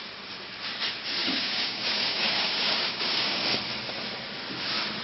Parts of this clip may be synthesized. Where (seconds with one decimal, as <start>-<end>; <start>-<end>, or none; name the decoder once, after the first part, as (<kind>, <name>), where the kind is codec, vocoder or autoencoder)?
1.2-3.4 (codec, DAC)